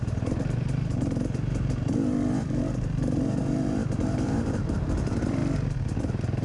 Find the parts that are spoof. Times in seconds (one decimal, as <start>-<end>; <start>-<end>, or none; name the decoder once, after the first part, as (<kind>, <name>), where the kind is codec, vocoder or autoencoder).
0.0-5.4 (vocoder, BigVGAN v2); 6.0-6.4

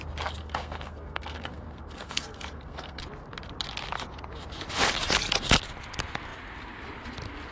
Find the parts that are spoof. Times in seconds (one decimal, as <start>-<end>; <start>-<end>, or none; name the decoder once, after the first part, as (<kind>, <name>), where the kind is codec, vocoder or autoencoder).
0.4-3.0 (codec, SNAC)